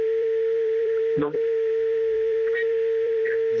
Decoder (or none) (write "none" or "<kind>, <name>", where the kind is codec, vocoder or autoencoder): vocoder, BigVGAN v2